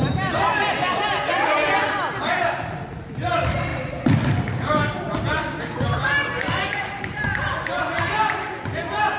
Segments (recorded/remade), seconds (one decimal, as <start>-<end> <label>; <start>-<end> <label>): 0.0-9.2 recorded